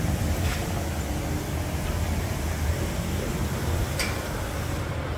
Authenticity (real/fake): real